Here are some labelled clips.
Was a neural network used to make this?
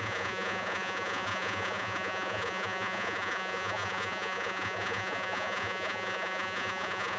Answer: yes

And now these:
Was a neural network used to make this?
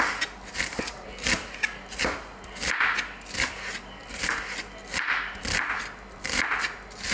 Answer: no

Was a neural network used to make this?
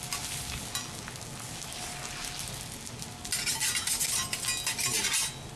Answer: no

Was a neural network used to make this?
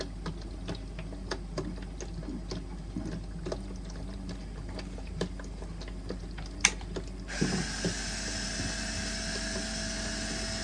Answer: no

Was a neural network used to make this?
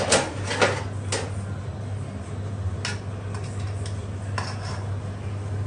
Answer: no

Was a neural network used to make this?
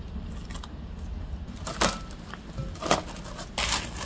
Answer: no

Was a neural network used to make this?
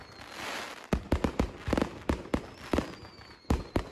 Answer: no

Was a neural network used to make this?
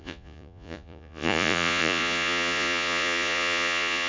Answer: yes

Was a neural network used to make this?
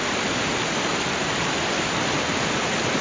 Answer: no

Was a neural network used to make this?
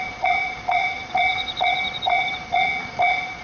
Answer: yes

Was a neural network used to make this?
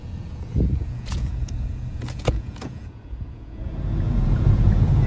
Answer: yes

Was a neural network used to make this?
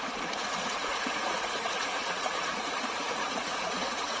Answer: yes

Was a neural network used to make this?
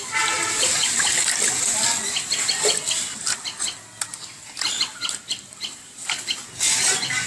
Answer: no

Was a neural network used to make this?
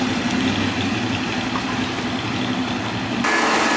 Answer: no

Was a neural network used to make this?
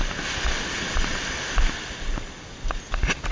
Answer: no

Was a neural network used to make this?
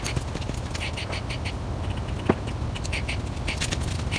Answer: no